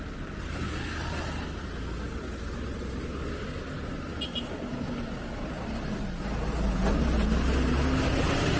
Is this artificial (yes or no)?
no